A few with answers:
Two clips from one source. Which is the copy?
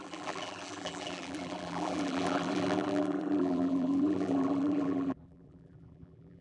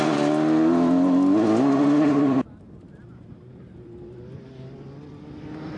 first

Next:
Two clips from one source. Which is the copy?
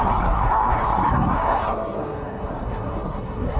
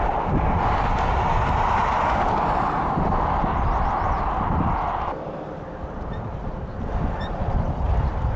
first